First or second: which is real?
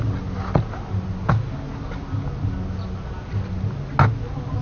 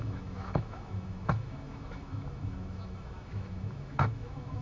first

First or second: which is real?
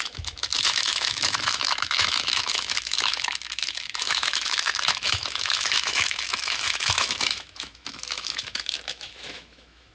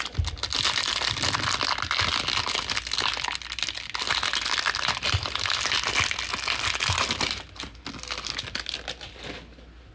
second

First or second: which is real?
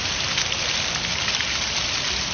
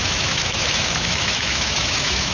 first